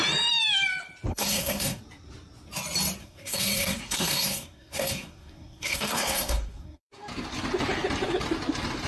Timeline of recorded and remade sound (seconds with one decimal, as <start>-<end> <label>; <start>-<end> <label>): 0.0-1.1 recorded; 1.1-1.8 remade; 1.8-3.0 recorded; 3.0-6.9 remade; 6.9-8.9 recorded